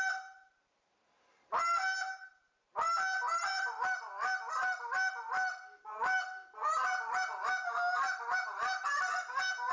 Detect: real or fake real